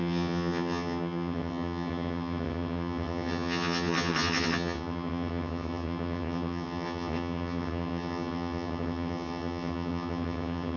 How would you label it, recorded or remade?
remade